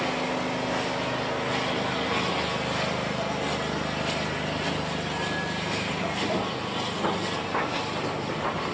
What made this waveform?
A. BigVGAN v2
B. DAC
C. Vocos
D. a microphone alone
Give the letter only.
D